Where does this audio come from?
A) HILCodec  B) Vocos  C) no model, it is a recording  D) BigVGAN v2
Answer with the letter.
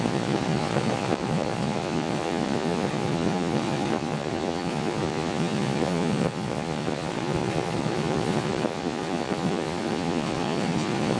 B